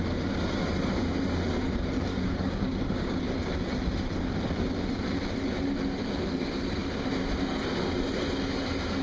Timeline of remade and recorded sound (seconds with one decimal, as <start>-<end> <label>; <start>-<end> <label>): 0.0-2.1 recorded; 2.1-3.2 remade; 3.2-9.0 recorded